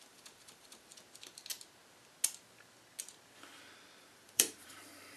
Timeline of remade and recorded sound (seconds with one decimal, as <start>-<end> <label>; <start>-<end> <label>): 0.0-0.9 remade; 0.9-4.0 recorded; 4.0-5.2 remade